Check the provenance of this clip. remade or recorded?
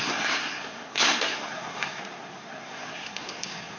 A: remade